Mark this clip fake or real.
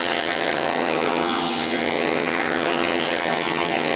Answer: fake